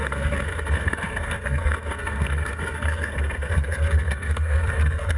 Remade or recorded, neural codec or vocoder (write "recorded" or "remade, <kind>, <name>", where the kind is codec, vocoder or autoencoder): remade, codec, SNAC